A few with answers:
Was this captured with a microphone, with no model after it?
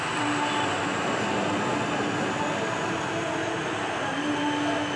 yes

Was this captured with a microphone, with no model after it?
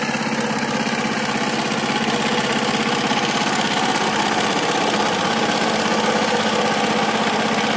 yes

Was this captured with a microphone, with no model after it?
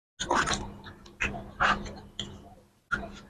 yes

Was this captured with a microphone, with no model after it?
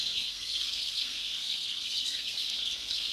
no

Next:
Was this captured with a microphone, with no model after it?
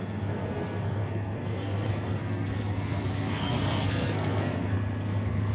no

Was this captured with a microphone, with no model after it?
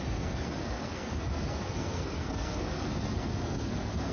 no